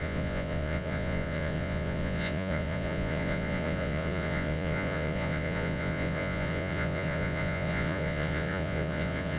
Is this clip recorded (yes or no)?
no